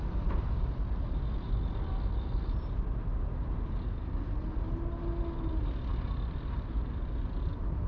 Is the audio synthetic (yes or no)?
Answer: no